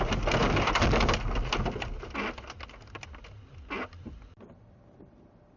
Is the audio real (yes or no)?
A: yes